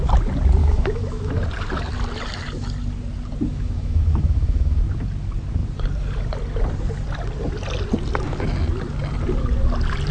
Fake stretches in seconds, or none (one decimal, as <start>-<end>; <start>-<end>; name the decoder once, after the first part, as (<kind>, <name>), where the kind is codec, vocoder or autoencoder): 0.6-1.3 (autoencoder, DAC-VAE); 3.5-4.8

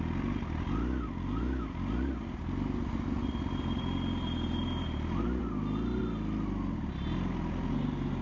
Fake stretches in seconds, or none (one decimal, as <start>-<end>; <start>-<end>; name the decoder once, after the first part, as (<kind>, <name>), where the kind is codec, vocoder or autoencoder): none

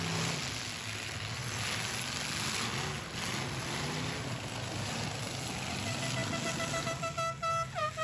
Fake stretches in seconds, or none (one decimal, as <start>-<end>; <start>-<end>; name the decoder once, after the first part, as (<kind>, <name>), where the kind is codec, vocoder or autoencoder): none

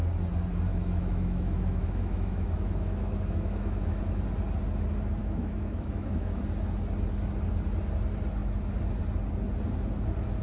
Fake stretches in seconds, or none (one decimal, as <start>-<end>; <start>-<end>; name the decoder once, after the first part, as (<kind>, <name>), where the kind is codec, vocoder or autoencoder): 0.7-4.0 (autoencoder, DAC-VAE); 5.2-6.4

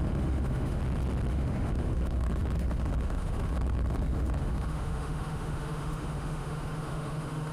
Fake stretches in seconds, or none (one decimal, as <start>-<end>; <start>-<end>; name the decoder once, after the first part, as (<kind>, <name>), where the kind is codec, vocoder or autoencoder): 0.0-0.8 (autoencoder, DAC-VAE); 1.3-7.5